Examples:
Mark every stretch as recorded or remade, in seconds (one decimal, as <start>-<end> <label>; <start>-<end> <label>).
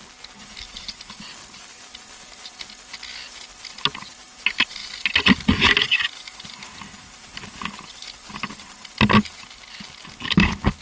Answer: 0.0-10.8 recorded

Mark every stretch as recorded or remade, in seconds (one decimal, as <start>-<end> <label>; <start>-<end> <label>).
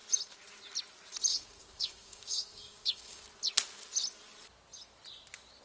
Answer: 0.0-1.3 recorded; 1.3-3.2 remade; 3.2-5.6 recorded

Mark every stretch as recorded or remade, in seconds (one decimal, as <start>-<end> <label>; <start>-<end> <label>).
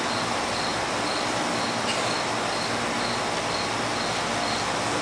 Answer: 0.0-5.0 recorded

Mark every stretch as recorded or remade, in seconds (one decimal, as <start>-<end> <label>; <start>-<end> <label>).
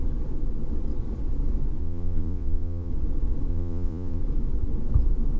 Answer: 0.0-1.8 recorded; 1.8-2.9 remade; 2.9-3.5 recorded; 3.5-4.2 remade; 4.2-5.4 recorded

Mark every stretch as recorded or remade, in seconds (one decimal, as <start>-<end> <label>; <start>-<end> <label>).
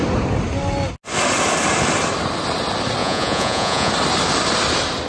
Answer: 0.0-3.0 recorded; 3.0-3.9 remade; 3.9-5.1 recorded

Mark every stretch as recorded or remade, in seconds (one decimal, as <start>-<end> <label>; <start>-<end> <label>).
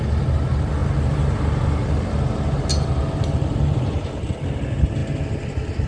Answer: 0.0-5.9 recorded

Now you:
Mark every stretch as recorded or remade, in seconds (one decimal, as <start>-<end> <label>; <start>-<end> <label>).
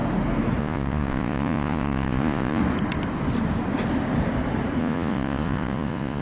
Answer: 0.0-0.6 recorded; 0.6-2.6 remade; 2.6-4.8 recorded; 4.8-6.2 remade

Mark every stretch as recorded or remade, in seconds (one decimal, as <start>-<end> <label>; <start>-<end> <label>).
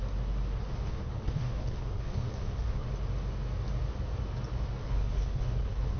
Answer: 0.0-0.6 recorded; 0.6-2.9 remade; 2.9-4.8 recorded; 4.8-6.0 remade